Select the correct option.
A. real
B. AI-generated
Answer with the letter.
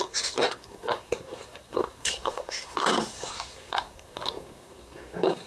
B